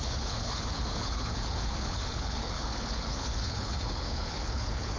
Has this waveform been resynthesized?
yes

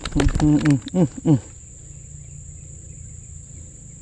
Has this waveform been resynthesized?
no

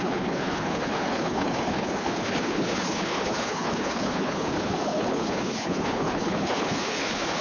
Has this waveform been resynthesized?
yes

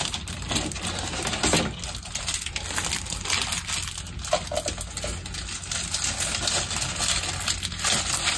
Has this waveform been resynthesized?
no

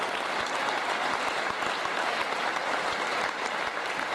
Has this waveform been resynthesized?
no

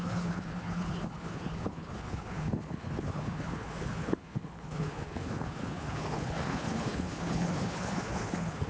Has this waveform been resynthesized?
yes